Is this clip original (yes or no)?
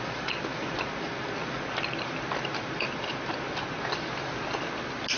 yes